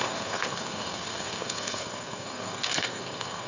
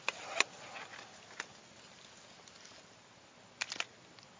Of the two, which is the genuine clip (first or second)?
second